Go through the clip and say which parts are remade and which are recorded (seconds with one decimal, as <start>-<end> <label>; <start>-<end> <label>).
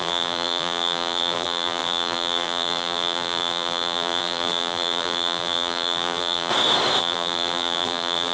0.0-6.5 remade; 6.5-7.0 recorded; 7.0-8.3 remade